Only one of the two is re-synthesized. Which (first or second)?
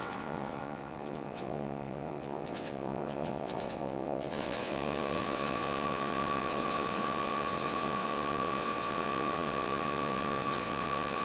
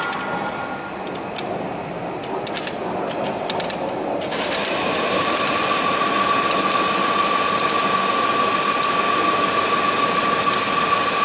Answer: first